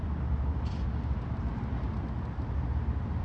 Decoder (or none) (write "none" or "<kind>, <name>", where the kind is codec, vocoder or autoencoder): vocoder, BigVGAN v2